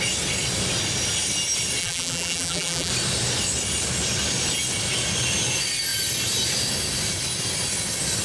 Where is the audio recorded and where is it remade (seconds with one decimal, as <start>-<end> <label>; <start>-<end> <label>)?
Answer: 0.0-1.8 recorded; 1.8-2.9 remade; 2.9-8.2 recorded